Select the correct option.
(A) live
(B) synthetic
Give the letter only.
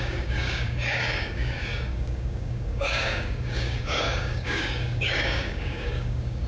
B